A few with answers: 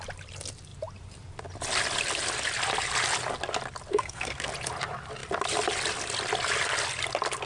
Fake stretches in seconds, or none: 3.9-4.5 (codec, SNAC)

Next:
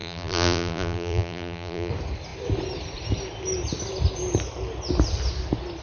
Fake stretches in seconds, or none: 0.0-1.9 (vocoder, BigVGAN v2)

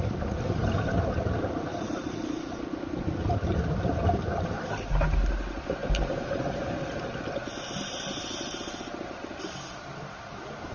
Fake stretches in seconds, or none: none

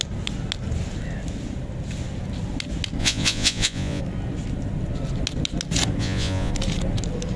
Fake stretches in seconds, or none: 3.0-4.0 (vocoder, Vocos); 6.0-6.5

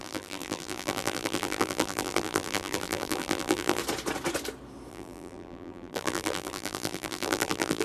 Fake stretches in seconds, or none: 0.0-3.8 (vocoder, BigVGAN v2); 4.9-7.8

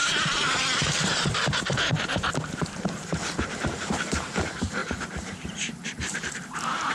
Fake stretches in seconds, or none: 0.0-6.9 (vocoder, BigVGAN v2)

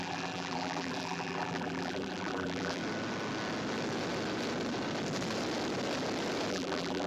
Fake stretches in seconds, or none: 0.0-2.8 (vocoder, BigVGAN v2); 6.5-7.1